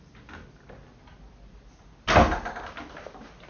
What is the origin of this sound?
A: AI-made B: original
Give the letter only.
B